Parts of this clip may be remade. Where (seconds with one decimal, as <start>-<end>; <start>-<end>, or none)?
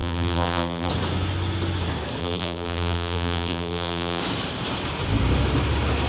0.0-0.9; 2.2-4.2